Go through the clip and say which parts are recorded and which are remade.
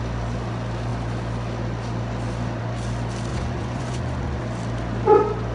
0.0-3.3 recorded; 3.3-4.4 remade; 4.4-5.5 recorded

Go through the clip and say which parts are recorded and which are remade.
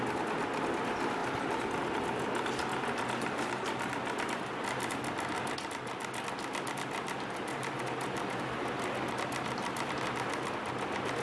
0.0-1.2 recorded; 1.2-1.9 remade; 1.9-11.2 recorded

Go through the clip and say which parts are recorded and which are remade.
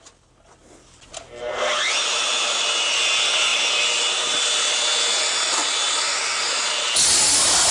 0.0-7.7 recorded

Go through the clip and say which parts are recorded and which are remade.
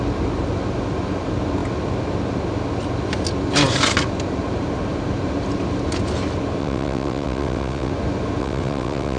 0.0-6.6 recorded; 6.6-7.9 remade; 7.9-8.4 recorded; 8.4-9.2 remade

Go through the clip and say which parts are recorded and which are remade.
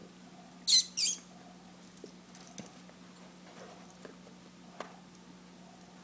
0.0-6.0 recorded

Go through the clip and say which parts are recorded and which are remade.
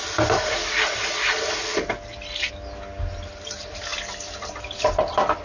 0.0-5.4 recorded